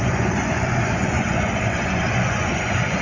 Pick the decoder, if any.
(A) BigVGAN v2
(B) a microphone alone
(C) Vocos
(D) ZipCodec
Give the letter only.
C